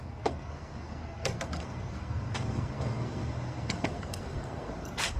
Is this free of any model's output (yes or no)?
no